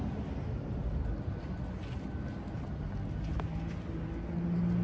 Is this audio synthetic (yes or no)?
no